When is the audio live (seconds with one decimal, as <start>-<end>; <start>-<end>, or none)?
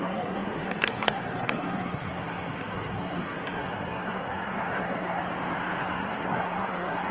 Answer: 5.2-5.8